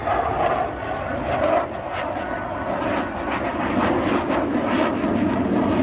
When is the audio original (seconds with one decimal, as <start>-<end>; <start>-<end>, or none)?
0.0-5.8